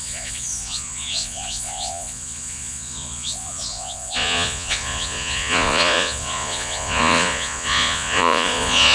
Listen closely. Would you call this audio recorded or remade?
remade